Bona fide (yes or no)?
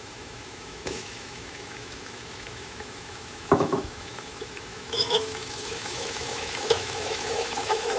no